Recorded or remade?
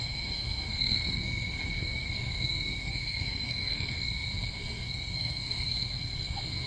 remade